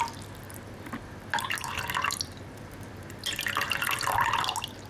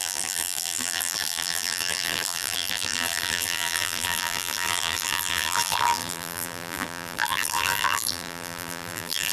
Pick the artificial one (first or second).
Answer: second